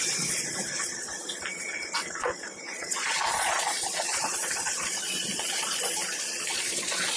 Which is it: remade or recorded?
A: remade